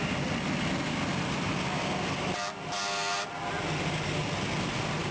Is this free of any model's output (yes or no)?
yes